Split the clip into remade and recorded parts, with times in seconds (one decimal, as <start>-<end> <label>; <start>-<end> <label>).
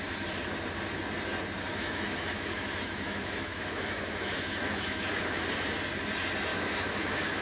0.0-1.7 recorded; 1.7-5.4 remade; 5.4-6.5 recorded; 6.5-7.4 remade